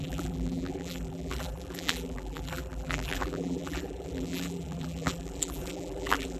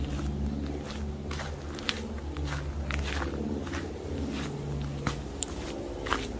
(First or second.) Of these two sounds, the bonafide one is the second